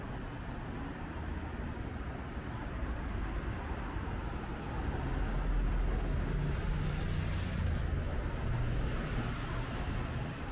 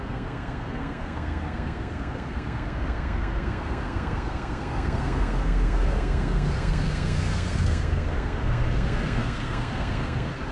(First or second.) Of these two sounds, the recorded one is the first